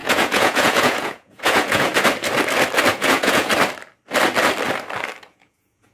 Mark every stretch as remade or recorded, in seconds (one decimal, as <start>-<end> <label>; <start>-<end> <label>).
0.0-1.9 remade; 1.9-2.9 recorded; 2.9-3.5 remade; 3.5-5.3 recorded; 5.3-5.9 remade

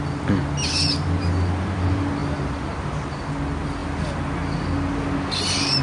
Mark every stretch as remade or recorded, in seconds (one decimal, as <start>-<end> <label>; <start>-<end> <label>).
0.0-5.8 recorded

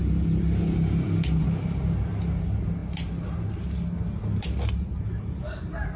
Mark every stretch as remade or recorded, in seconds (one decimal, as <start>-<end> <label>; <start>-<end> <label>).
0.0-6.0 recorded

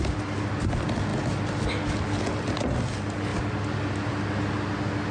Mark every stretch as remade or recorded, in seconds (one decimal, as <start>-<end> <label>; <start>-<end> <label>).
0.0-5.1 recorded

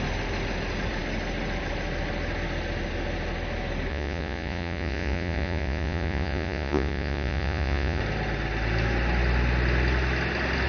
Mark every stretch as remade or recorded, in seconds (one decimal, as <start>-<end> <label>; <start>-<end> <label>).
0.0-3.9 recorded; 3.9-8.0 remade; 8.0-10.7 recorded

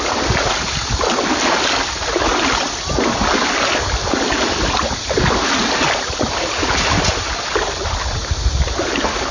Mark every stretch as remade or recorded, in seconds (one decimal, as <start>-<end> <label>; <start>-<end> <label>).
0.0-9.3 recorded